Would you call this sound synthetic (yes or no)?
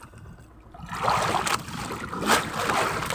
no